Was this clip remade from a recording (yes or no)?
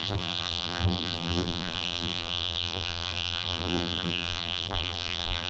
yes